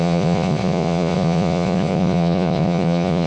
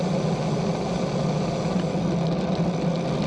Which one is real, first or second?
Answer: second